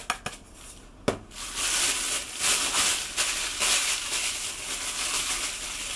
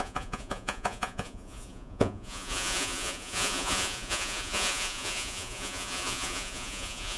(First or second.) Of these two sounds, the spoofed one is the second